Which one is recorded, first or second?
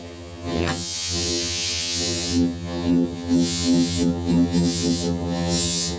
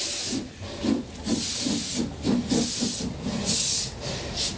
second